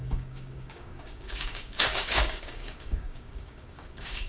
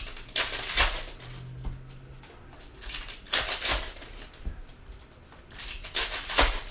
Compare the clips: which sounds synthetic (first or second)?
first